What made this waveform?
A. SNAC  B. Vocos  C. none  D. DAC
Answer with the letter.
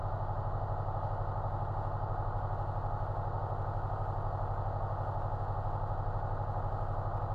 C